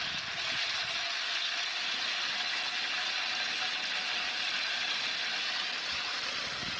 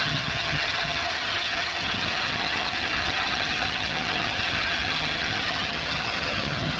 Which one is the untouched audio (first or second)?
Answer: first